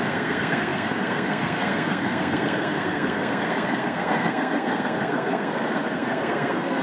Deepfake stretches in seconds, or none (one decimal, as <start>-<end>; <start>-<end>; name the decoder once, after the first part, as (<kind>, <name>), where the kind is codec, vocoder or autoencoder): 0.0-6.8 (codec, SNAC)